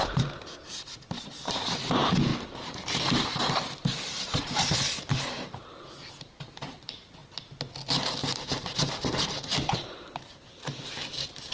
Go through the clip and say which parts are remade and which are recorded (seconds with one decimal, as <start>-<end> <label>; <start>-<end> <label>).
0.0-2.3 remade; 2.3-3.4 recorded; 3.4-7.2 remade; 7.2-8.3 recorded; 8.3-11.5 remade